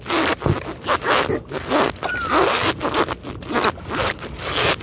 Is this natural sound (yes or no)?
yes